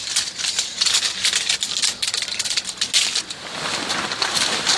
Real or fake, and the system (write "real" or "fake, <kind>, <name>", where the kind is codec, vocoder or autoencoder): real